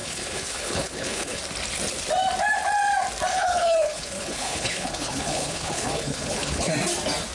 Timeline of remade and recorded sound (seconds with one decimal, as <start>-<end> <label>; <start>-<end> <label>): 0.0-1.4 remade; 1.4-3.3 recorded; 3.3-6.7 remade; 6.7-7.3 recorded